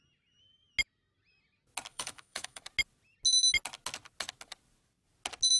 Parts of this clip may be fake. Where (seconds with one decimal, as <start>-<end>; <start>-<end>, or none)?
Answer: 1.9-2.6